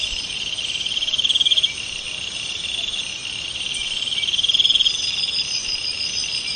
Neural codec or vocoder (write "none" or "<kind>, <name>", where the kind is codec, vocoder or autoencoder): vocoder, BigVGAN v2